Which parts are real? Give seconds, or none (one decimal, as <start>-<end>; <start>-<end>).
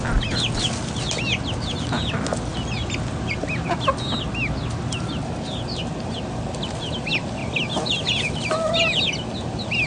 0.0-7.4; 8.7-9.9